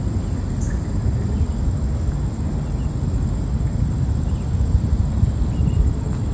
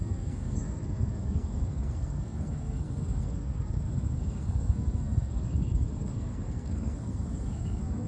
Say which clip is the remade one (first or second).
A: second